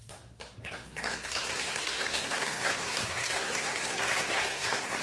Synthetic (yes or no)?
yes